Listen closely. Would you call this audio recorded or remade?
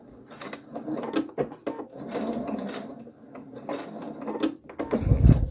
recorded